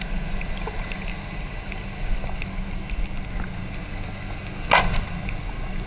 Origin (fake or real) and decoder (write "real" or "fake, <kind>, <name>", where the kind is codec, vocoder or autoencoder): real